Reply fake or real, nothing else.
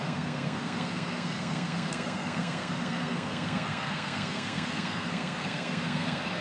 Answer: fake